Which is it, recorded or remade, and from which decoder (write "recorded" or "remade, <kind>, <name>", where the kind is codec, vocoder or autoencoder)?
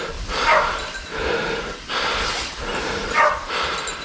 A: remade, vocoder, BigVGAN v2